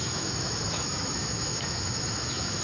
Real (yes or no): no